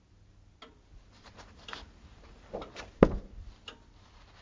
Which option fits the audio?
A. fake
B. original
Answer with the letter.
B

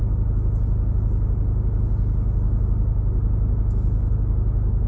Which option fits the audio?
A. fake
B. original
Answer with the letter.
B